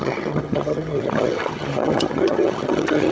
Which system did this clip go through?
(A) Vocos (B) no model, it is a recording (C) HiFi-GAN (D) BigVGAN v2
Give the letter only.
C